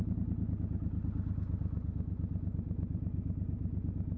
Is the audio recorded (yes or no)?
yes